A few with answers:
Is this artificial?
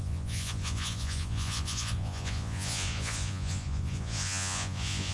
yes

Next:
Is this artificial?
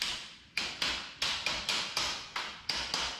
no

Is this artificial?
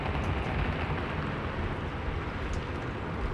no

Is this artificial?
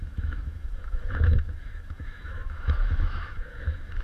yes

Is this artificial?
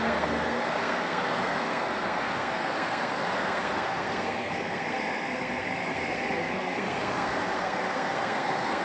yes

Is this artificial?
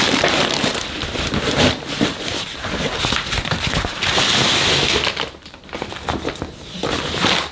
no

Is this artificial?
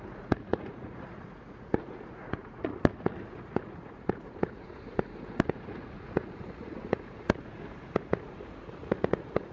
yes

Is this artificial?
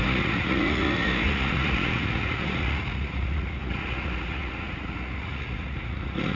yes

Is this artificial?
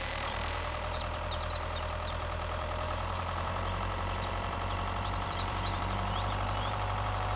yes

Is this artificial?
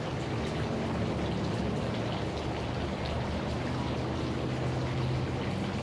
no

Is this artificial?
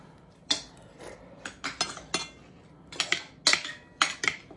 no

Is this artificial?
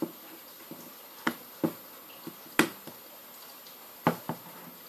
no